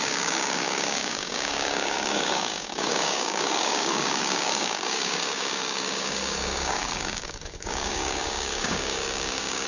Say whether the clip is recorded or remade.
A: remade